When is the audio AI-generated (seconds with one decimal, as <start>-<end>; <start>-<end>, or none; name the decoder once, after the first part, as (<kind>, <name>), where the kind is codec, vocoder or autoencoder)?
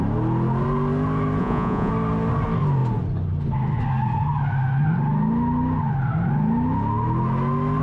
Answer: 1.4-1.9 (vocoder, Vocos)